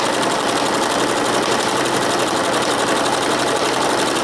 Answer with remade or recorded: recorded